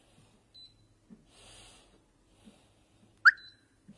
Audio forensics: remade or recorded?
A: recorded